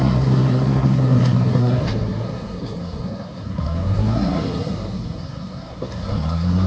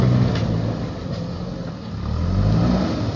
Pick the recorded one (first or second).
second